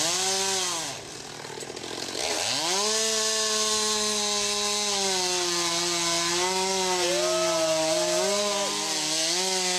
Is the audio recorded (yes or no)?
yes